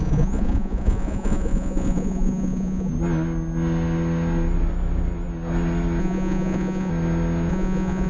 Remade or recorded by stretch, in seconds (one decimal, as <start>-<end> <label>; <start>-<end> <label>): 0.0-2.9 remade; 2.9-6.0 recorded; 6.0-6.9 remade; 6.9-7.5 recorded; 7.5-8.1 remade